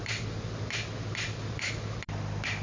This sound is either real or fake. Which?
real